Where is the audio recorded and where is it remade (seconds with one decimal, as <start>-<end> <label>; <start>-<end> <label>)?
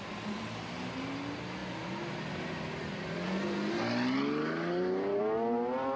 0.0-6.0 recorded